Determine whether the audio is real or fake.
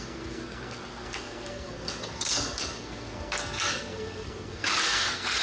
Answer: fake